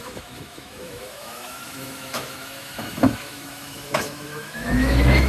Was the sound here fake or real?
fake